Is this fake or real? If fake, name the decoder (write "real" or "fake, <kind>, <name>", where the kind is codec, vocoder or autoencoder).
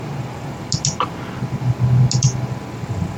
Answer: real